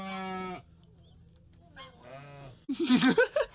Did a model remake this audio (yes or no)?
no